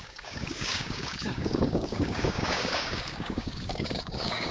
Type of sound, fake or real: fake